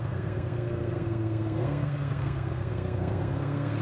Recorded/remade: remade